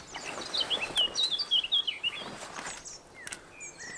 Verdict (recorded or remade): recorded